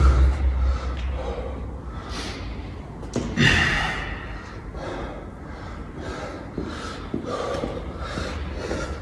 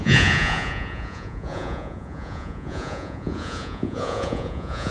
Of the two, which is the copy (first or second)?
second